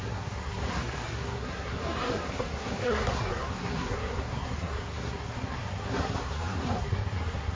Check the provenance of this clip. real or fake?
fake